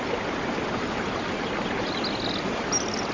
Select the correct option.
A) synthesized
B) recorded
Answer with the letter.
B